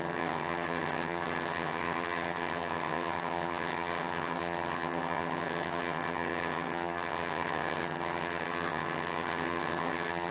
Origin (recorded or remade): remade